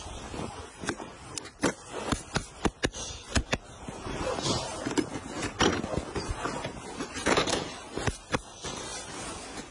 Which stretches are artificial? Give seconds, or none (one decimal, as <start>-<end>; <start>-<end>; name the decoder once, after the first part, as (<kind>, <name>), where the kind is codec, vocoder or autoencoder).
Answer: 0.0-5.1 (vocoder, BigVGAN v2); 7.5-8.9